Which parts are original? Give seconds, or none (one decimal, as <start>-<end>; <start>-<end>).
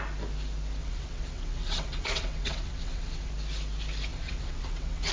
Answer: 0.0-0.8; 3.3-4.1